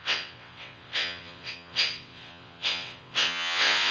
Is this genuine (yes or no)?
no